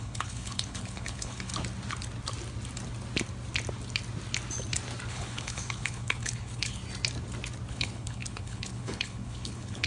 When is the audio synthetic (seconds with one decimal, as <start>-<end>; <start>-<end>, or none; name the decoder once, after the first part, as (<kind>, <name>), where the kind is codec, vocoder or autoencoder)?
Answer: 0.0-1.5 (codec, HILCodec); 5.1-6.8; 7.7-9.9